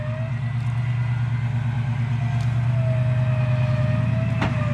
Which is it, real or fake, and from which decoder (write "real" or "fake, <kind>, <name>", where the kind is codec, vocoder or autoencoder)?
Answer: real